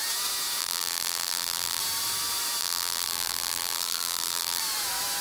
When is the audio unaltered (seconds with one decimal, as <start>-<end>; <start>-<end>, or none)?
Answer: 0.0-0.6; 1.8-2.6; 4.6-5.2